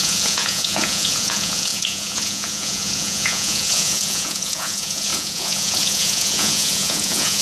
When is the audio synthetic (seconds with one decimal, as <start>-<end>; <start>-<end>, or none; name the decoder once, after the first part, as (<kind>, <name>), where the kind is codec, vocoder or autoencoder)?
0.0-7.4 (vocoder, Vocos)